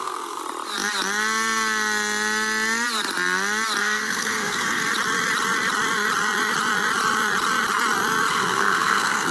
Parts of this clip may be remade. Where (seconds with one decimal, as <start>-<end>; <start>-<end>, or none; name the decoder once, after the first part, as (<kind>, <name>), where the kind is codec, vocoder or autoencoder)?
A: 0.0-0.4 (codec, SNAC); 3.8-4.8; 8.3-9.3